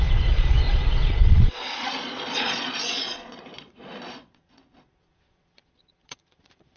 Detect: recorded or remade remade